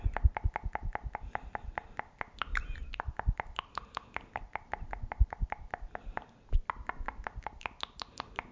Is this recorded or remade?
recorded